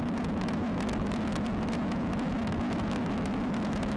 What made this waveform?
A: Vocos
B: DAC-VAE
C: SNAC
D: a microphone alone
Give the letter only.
B